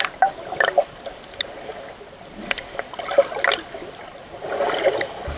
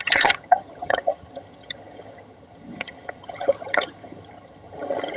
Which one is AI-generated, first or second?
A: second